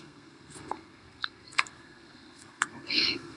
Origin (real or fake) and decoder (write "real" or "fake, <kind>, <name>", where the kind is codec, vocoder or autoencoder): fake, codec, SNAC